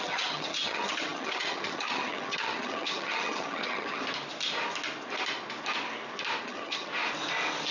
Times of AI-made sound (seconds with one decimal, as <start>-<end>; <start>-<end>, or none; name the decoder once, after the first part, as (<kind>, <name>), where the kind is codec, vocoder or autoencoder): 0.0-4.0 (vocoder, HiFi-GAN); 6.4-6.9